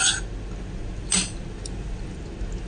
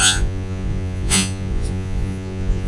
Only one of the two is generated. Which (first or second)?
second